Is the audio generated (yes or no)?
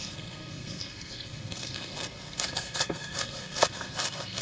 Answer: yes